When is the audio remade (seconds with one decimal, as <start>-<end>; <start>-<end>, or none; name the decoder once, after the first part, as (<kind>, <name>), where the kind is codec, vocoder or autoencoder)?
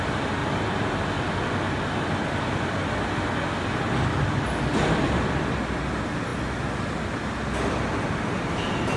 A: 0.4-1.0 (vocoder, BigVGAN v2)